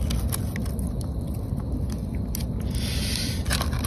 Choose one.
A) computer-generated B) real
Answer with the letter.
B